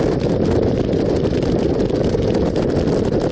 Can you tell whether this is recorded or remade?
recorded